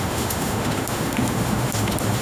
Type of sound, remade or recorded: remade